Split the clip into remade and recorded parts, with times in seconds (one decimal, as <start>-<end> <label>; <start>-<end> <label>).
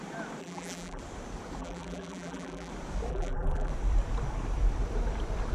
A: 0.0-0.4 recorded; 0.4-1.0 remade; 1.0-1.6 recorded; 1.6-2.7 remade; 2.7-3.1 recorded; 3.1-3.7 remade; 3.7-5.5 recorded